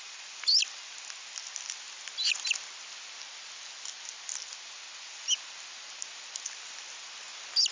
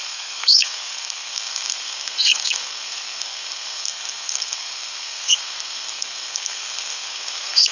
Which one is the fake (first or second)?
second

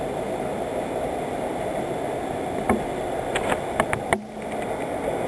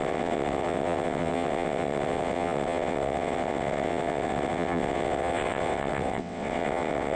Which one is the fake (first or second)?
second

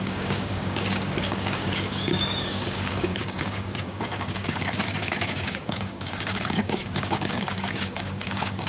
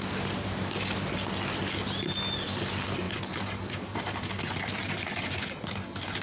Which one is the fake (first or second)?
first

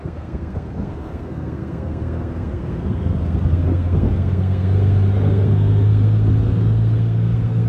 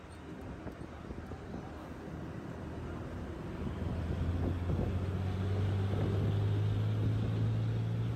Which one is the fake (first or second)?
first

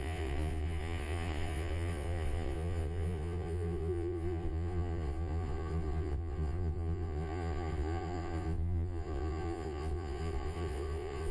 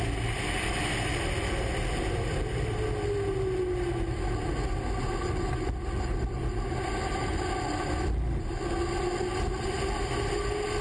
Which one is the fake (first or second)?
first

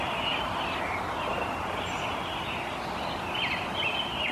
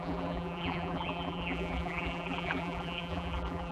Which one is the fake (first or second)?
second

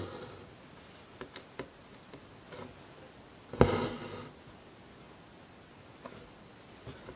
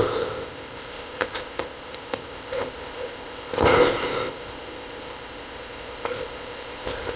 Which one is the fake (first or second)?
second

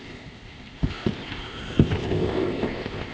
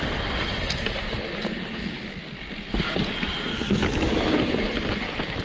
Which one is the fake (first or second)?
first